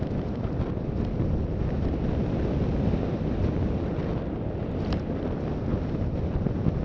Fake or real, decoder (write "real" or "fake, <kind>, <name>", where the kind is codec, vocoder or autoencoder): real